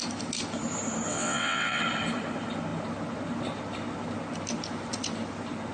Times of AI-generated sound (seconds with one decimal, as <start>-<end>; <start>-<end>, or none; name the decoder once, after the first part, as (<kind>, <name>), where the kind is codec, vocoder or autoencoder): 1.1-1.8 (vocoder, WaveNeXt)